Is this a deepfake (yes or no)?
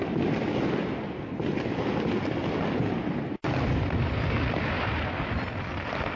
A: no